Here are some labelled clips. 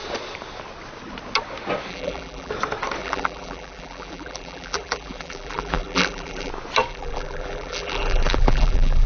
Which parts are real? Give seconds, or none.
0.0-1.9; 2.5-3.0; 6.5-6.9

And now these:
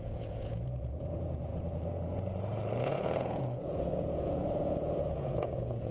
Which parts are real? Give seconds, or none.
none

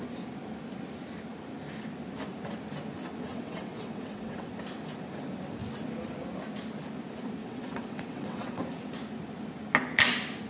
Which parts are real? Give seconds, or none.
0.0-3.3; 4.5-7.4; 8.6-10.5

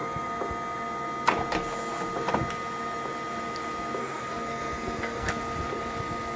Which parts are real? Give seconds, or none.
0.0-4.0; 5.3-6.4

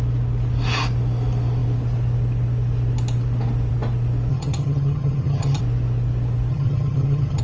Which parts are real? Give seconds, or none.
0.0-4.3; 5.6-6.5

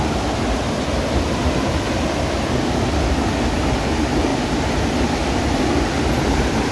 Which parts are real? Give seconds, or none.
0.0-6.7

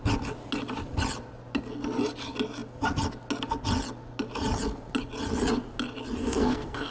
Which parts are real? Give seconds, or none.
0.0-6.2